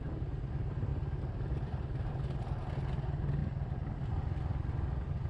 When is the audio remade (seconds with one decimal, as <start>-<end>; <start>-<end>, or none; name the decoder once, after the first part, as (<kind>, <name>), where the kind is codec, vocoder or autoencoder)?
none